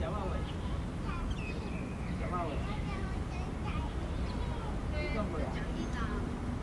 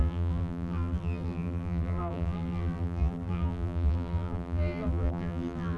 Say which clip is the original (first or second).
first